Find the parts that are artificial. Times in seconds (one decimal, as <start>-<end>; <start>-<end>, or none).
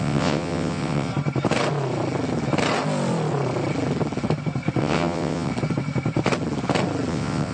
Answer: 0.0-1.1; 4.8-5.5; 7.1-7.5